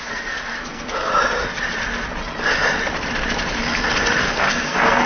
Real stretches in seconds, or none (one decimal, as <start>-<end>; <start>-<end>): 1.1-4.2